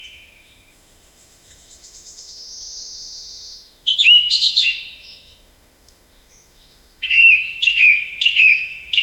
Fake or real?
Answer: fake